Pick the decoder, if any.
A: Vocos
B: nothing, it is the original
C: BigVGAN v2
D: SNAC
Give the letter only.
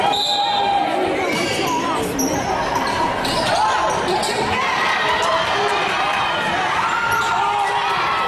B